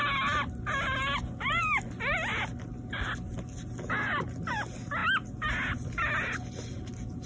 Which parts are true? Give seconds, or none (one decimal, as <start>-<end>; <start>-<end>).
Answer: 0.0-7.3